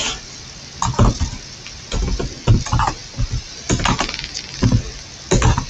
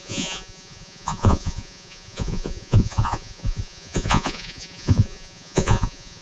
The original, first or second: first